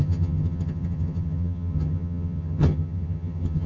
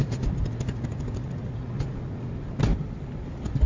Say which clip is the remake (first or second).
first